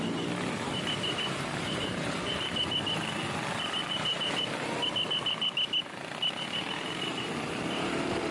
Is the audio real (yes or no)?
yes